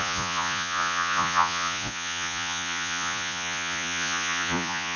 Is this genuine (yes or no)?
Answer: no